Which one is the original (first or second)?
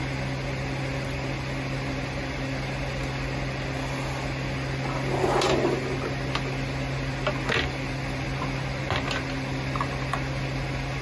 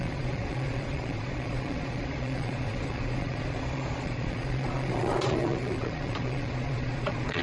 first